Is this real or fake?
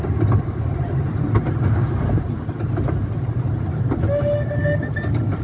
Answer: real